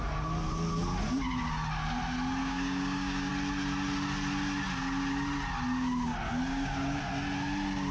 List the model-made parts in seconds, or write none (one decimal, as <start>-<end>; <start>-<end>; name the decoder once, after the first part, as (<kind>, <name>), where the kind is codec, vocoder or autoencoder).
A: 2.4-3.3 (codec, DAC); 6.5-7.0